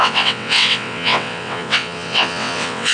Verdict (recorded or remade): remade